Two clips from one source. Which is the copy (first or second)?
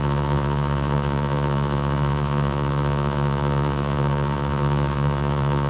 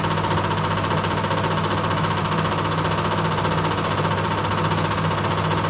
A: first